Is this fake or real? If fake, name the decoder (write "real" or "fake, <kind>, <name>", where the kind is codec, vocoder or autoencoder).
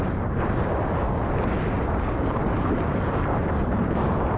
fake, vocoder, BigVGAN v2